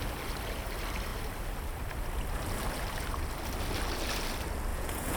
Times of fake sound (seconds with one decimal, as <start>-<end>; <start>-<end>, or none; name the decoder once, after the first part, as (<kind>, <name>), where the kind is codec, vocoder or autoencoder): 4.7-5.2 (vocoder, Vocos)